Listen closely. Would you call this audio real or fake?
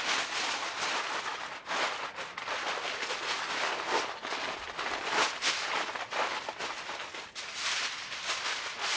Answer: real